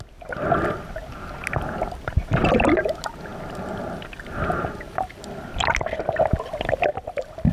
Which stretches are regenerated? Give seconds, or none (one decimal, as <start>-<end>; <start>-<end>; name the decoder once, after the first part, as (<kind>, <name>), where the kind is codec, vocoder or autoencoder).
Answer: none